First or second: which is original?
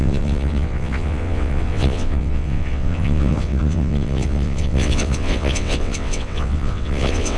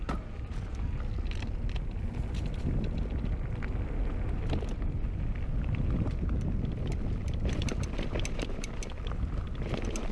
second